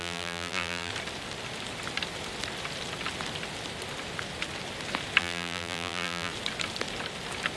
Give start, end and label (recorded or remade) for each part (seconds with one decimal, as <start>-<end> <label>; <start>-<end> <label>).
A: 0.0-0.9 remade; 0.9-5.2 recorded; 5.2-6.3 remade; 6.3-7.6 recorded